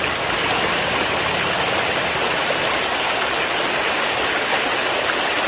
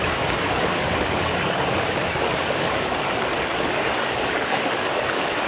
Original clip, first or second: first